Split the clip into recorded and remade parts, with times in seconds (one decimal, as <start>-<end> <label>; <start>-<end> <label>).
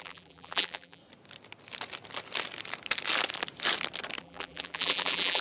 0.0-1.0 remade; 1.0-4.2 recorded; 4.2-5.4 remade